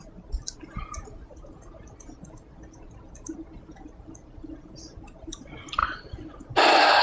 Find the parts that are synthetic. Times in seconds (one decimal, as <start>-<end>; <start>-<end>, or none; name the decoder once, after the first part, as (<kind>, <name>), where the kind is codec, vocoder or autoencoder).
none